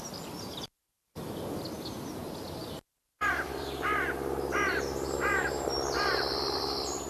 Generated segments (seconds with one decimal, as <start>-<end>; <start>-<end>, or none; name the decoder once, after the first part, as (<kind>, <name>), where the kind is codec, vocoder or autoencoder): 0.0-2.2 (vocoder, BigVGAN v2); 2.9-7.1